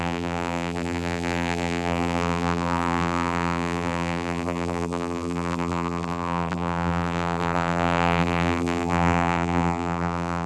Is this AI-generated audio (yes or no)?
yes